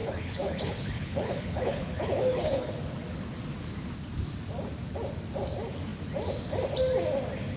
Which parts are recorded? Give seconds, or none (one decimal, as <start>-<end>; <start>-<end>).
2.7-7.6